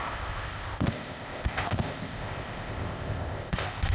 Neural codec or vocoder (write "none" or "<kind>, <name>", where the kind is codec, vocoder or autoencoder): codec, ZipCodec